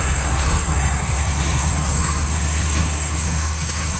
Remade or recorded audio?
remade